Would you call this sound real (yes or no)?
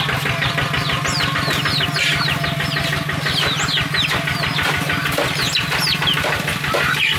yes